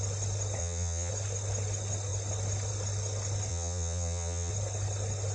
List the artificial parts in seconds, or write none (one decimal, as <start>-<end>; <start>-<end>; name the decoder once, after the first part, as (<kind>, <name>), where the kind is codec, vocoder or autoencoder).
0.6-1.1 (vocoder, Vocos); 3.5-4.5